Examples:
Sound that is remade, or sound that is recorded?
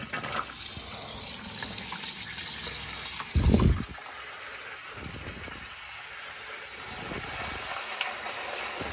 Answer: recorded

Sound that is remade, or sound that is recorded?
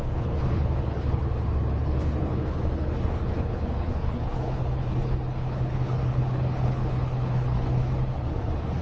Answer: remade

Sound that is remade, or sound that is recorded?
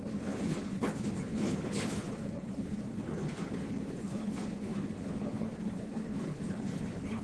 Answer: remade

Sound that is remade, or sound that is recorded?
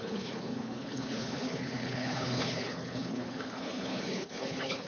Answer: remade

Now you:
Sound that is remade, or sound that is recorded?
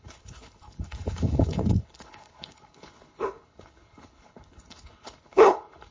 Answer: remade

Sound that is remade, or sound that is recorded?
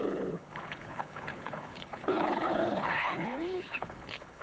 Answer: remade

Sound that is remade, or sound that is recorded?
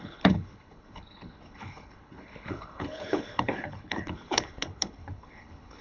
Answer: remade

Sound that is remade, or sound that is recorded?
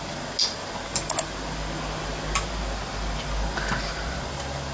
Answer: recorded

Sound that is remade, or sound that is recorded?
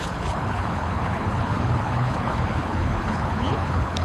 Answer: remade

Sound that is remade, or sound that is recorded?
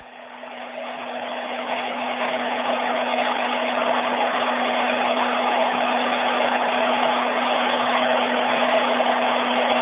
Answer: remade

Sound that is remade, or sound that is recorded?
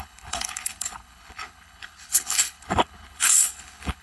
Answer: remade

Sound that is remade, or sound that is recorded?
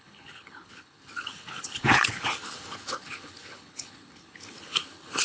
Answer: remade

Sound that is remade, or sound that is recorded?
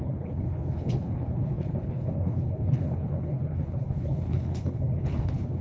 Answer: remade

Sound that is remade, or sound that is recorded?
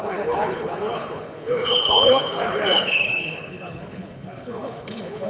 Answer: remade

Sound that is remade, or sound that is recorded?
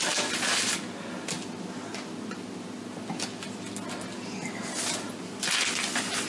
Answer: recorded